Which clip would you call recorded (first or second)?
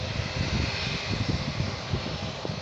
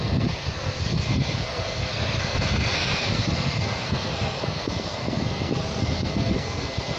first